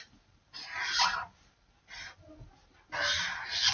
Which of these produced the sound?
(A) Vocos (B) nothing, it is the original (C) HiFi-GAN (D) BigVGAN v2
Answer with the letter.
B